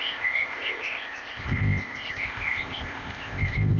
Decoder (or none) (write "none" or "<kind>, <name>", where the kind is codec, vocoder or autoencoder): codec, ZipCodec